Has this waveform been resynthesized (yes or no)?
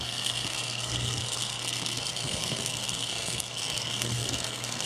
yes